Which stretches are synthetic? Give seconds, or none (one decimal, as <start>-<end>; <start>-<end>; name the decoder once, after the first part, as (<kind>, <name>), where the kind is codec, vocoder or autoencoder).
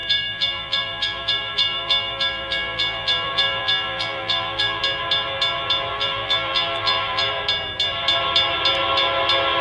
0.0-4.8 (vocoder, BigVGAN v2); 5.9-7.3